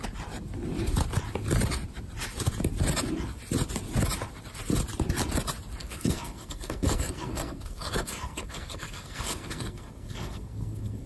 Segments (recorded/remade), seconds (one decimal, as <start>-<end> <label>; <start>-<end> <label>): 0.0-5.8 recorded; 5.8-11.1 remade